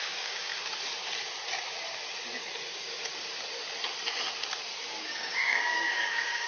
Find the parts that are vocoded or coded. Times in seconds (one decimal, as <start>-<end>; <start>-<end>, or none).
0.0-0.5; 2.4-2.9; 5.0-6.5